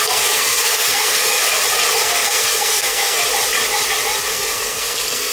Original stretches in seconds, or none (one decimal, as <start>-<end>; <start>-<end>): 1.4-1.9; 3.2-4.3